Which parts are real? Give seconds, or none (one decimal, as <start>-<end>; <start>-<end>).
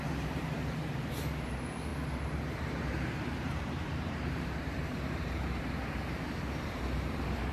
none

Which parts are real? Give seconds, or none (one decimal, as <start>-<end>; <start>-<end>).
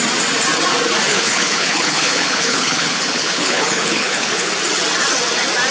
0.0-1.1; 4.5-5.7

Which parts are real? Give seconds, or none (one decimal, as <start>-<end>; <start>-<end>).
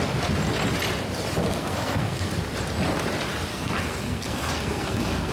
0.0-1.4; 2.3-3.5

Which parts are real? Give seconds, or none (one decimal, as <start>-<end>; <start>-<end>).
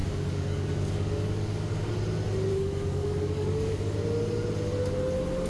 1.9-2.5; 3.8-5.5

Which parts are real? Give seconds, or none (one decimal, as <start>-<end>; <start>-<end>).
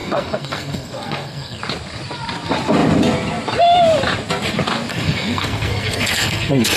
1.6-4.9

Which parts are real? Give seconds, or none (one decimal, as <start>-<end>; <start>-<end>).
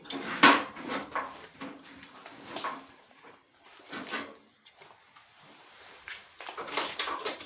2.2-2.9; 3.7-5.4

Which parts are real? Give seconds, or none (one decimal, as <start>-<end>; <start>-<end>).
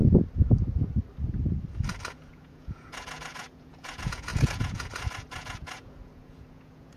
0.0-2.3